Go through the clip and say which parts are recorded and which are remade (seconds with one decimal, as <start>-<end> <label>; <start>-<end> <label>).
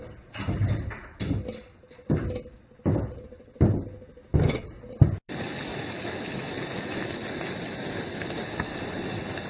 0.0-5.7 recorded; 5.7-6.5 remade; 6.5-9.5 recorded